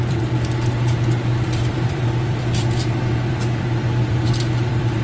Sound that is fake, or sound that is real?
fake